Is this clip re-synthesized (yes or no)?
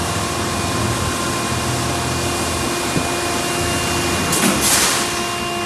no